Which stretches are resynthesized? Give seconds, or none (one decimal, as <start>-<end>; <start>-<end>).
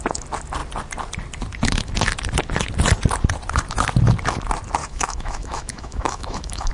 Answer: 4.8-6.7